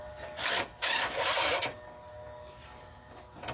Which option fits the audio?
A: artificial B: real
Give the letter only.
B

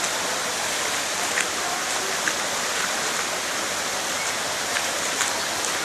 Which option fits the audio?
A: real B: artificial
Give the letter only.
A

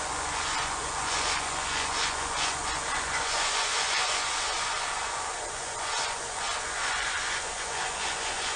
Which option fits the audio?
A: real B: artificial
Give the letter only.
B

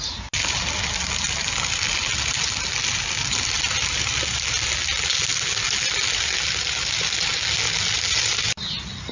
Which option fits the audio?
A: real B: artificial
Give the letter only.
A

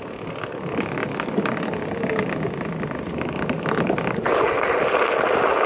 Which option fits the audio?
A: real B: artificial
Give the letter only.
A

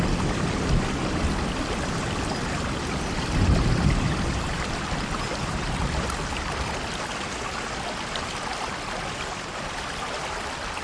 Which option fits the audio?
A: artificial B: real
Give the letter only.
B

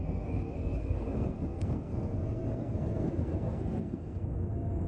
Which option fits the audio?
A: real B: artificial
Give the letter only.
B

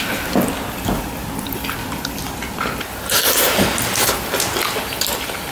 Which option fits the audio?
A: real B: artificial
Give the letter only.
A